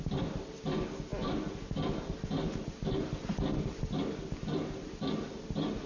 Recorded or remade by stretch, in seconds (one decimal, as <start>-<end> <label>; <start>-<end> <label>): 0.0-5.9 recorded